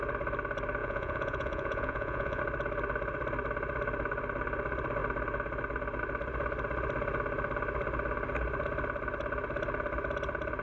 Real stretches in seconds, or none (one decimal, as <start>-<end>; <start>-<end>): 0.0-0.8; 2.4-10.6